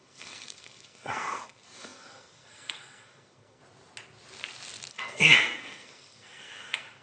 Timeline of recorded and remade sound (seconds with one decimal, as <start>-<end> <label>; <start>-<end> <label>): 0.0-3.6 remade; 3.6-4.9 recorded; 4.9-7.0 remade